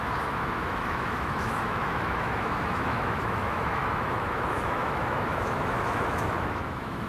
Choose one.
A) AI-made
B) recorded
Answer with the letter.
A